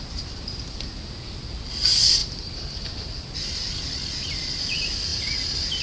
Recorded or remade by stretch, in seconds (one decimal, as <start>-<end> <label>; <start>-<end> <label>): 0.0-5.8 recorded